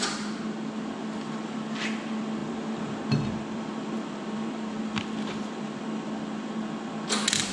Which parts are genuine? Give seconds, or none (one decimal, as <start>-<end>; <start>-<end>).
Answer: 0.0-2.4; 5.8-7.5